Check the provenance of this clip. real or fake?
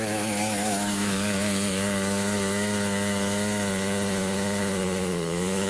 fake